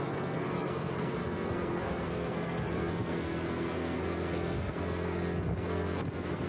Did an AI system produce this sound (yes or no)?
yes